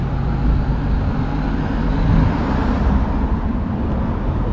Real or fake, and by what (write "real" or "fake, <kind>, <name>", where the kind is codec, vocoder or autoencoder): real